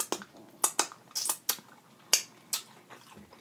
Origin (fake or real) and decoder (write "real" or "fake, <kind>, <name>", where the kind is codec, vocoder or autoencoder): real